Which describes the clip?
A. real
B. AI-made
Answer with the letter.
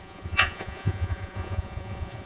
B